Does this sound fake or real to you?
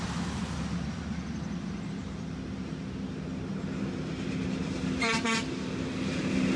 real